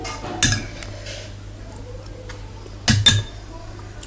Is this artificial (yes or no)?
no